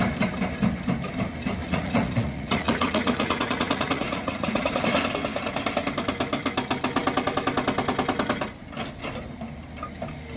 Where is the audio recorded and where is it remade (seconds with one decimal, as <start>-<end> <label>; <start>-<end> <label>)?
0.0-1.6 recorded; 1.6-4.8 remade; 4.8-10.4 recorded